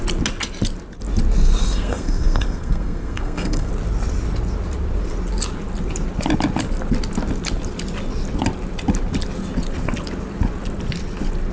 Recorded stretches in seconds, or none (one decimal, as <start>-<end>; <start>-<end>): 0.0-1.6; 3.7-11.5